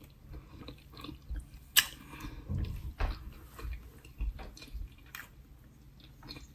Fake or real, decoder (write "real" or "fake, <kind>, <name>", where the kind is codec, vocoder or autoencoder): real